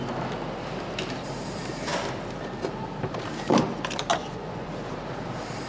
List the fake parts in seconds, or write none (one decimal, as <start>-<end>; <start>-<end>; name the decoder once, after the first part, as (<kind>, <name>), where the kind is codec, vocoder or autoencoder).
4.1-4.7 (vocoder, Vocos)